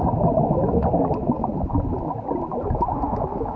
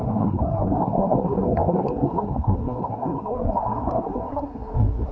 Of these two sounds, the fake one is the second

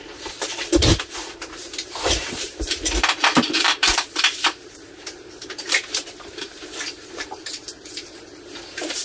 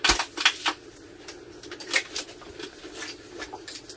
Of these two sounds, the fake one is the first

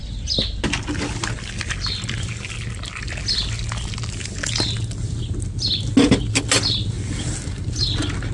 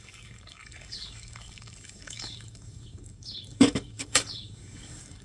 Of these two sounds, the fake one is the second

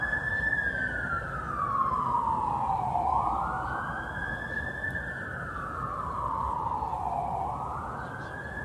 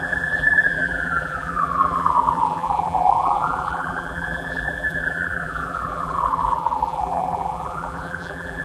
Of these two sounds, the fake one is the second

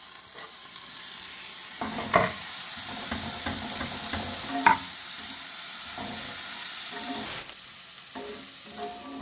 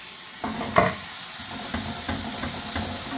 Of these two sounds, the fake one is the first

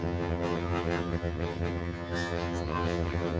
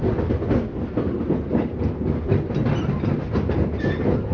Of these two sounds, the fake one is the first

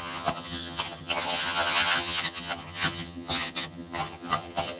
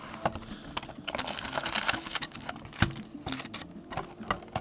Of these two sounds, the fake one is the first